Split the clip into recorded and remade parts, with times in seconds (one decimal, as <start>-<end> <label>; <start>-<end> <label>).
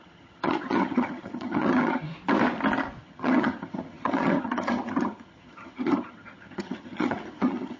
0.0-2.1 remade; 2.1-3.0 recorded; 3.0-7.8 remade